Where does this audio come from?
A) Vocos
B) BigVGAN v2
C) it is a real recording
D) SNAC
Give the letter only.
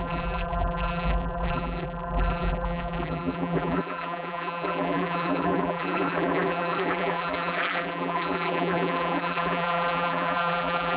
B